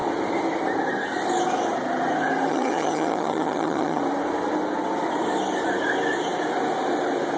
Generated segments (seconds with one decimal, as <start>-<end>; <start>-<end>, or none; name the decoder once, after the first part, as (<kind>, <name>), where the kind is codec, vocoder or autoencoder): 2.5-4.0 (vocoder, HiFi-GAN)